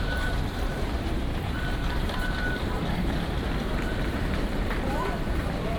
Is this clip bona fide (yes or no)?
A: no